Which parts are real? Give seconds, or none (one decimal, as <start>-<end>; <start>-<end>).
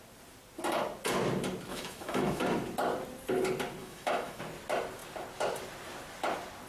0.0-1.7; 2.4-3.8; 4.4-6.7